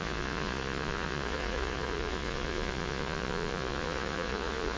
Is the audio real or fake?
fake